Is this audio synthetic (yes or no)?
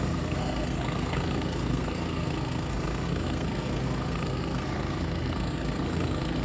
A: yes